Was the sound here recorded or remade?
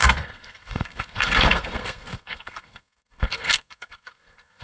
remade